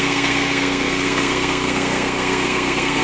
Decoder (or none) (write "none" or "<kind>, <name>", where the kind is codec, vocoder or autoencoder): codec, SNAC